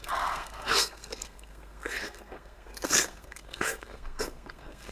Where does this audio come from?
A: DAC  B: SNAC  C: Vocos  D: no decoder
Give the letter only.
B